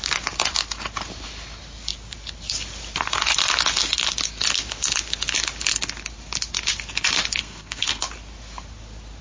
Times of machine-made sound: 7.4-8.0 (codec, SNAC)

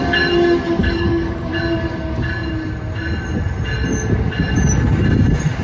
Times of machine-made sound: 0.8-1.5 (codec, DAC)